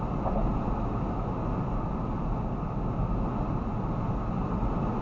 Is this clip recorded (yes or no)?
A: yes